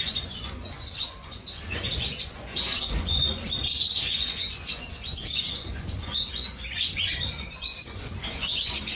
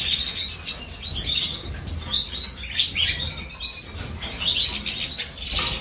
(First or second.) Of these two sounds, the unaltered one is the second